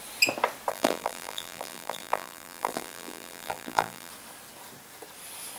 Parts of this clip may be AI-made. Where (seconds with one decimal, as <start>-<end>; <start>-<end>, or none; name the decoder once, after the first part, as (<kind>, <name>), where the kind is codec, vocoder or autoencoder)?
0.7-4.1 (vocoder, BigVGAN v2)